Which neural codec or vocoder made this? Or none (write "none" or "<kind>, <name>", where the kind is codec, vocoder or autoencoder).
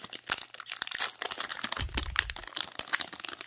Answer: none